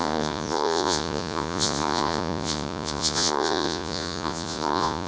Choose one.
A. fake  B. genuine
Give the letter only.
A